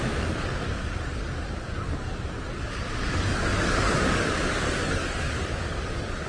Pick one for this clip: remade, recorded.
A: remade